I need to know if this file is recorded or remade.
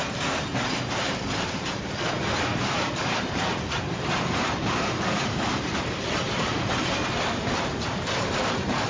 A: remade